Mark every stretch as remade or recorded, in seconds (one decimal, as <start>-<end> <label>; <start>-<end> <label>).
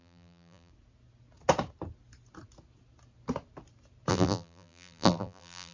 0.0-0.7 remade; 0.7-4.1 recorded; 4.1-5.7 remade